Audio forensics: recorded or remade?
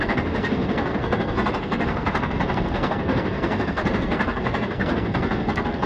remade